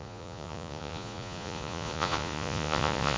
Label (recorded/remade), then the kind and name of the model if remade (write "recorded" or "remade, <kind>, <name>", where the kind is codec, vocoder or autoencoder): remade, vocoder, Vocos